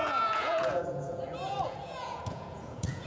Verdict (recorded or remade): remade